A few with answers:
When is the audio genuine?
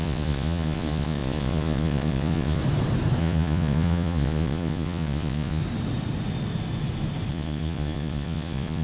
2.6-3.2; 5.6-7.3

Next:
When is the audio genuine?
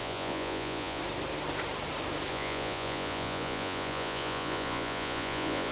1.0-2.3